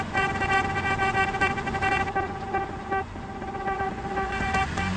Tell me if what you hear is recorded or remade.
remade